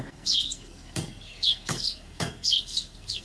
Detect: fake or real fake